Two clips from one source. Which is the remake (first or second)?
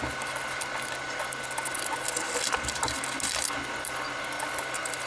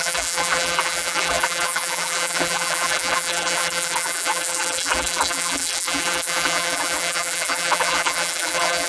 second